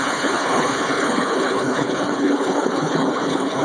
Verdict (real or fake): fake